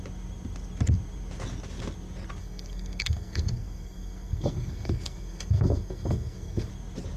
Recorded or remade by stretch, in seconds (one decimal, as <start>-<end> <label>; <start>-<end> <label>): 0.0-2.4 recorded; 2.4-6.7 remade; 6.7-7.2 recorded